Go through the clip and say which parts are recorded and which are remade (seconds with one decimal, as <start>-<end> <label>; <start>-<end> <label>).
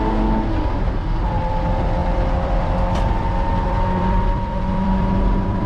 0.0-2.0 recorded; 2.0-5.7 remade